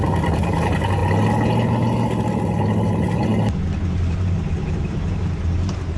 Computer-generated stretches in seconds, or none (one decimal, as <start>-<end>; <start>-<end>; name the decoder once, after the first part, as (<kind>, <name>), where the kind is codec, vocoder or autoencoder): 0.0-1.0 (vocoder, BigVGAN v2); 2.6-6.0